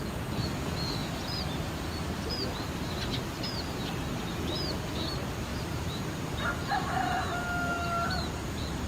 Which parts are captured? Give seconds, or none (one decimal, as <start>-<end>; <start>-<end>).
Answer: 0.0-1.0; 2.9-5.5; 6.5-8.9